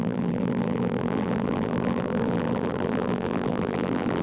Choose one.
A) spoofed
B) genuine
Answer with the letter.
A